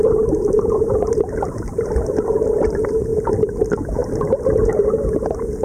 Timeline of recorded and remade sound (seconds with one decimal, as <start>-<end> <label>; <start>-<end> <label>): 0.0-4.0 remade; 4.0-4.7 recorded; 4.7-5.6 remade